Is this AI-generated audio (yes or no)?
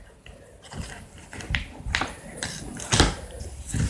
yes